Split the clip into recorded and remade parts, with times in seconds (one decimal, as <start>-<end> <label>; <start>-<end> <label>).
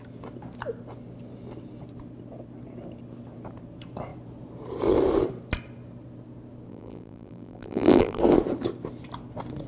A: 0.0-6.7 recorded; 6.7-8.2 remade; 8.2-9.7 recorded